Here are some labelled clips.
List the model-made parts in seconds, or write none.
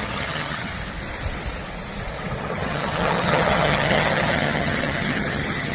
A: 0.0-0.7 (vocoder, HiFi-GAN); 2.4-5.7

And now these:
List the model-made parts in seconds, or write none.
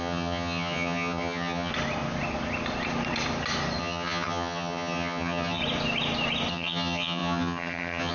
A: 0.0-1.7 (vocoder, HiFi-GAN); 3.8-5.6; 6.5-8.1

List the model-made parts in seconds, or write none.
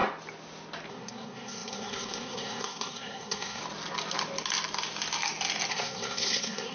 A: 0.9-3.6 (codec, SNAC); 5.7-6.7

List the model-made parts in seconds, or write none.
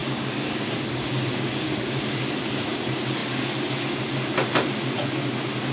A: 0.0-2.0 (codec, DAC)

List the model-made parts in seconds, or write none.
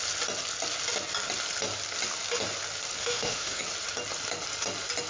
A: 3.0-3.6 (autoencoder, DAC-VAE)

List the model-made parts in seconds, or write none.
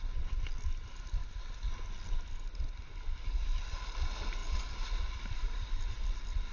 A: 0.0-1.2 (vocoder, BigVGAN v2); 3.6-4.4; 5.1-6.5